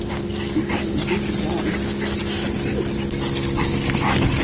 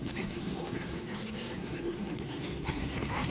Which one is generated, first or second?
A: second